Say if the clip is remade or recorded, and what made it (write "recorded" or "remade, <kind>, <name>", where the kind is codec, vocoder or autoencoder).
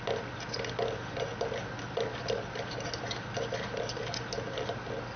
recorded